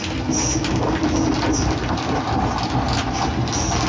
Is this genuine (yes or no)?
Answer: yes